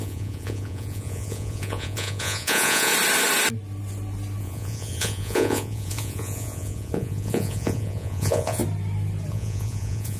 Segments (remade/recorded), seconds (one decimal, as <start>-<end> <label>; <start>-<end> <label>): 0.0-2.9 remade; 2.9-4.4 recorded; 4.4-8.6 remade; 8.6-9.3 recorded; 9.3-10.2 remade